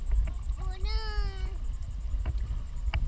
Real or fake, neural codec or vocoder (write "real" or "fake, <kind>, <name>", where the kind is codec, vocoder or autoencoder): real